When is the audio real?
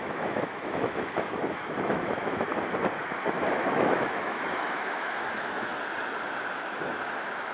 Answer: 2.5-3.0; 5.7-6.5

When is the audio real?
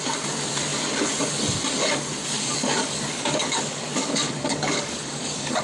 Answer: 0.0-2.2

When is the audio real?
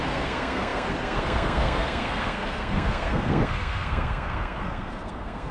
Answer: none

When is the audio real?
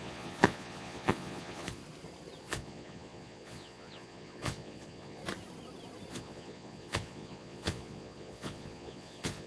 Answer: 1.8-2.4; 5.2-6.1